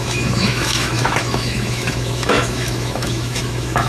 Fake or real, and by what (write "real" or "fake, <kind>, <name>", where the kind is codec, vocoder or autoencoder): fake, autoencoder, DAC-VAE